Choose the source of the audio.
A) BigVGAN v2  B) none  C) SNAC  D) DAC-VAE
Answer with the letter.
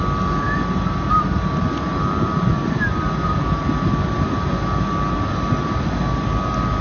B